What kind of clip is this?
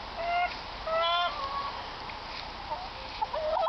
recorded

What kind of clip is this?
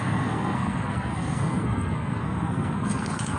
remade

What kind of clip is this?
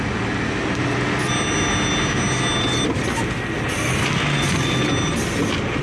recorded